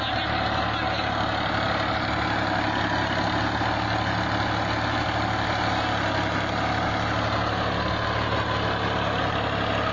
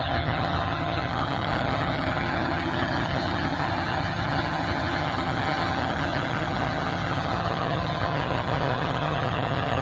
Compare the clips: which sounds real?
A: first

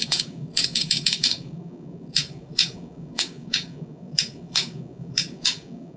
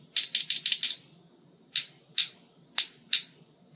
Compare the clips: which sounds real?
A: second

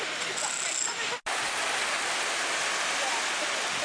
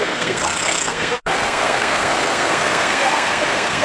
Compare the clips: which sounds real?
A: first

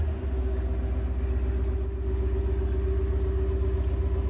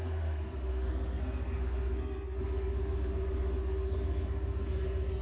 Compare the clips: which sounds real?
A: first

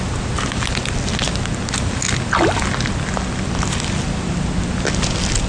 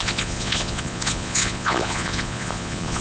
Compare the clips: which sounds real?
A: first